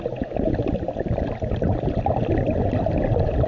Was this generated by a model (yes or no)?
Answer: no